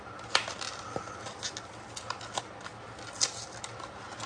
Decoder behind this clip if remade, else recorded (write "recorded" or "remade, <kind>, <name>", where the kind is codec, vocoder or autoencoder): recorded